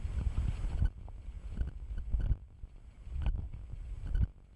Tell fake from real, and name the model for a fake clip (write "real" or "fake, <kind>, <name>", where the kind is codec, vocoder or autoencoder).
real